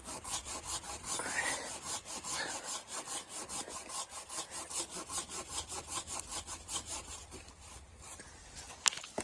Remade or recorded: recorded